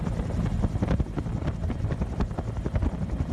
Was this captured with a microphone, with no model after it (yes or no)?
yes